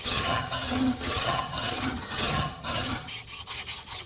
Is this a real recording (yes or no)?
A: no